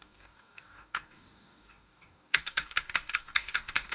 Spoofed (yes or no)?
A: yes